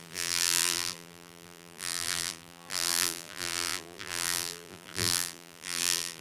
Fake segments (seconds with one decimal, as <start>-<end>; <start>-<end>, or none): 0.0-6.2

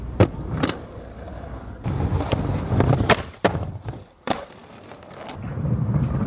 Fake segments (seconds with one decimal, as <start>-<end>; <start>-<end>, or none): 0.0-6.3

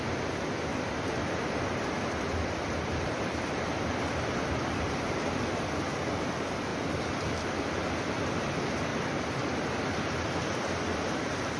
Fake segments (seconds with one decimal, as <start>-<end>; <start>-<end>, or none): 0.7-5.8; 8.9-11.1

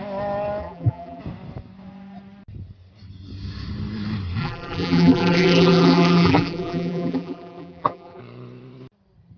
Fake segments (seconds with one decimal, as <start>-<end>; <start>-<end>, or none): 0.6-1.2; 4.4-8.2

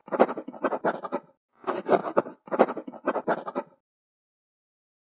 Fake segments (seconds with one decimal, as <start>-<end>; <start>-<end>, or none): none

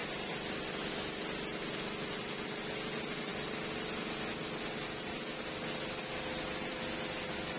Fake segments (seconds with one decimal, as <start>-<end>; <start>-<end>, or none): 0.0-0.9

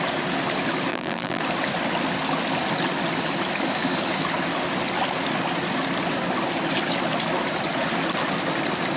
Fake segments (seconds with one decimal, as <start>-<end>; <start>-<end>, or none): 0.9-1.4

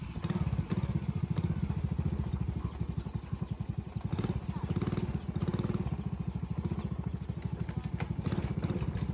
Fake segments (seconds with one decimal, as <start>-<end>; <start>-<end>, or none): none